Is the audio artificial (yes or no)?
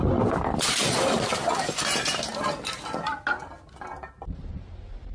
no